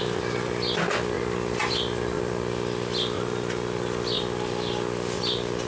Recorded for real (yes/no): yes